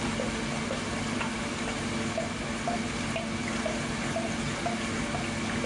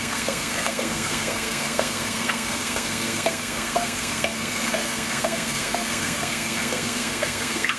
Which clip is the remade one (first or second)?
second